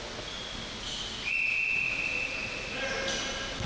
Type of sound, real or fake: real